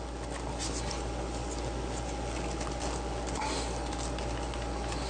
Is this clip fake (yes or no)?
no